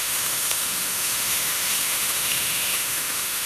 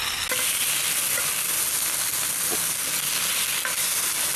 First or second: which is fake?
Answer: first